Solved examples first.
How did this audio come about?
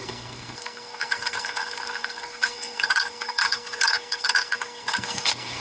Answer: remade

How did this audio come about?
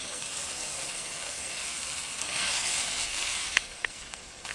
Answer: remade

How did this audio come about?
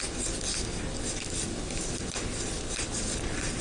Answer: recorded